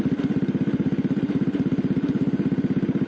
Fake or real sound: real